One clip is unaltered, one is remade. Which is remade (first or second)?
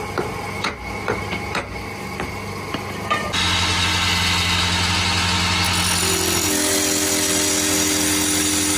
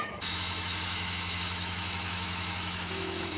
second